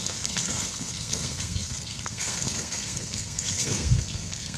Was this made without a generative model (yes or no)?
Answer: no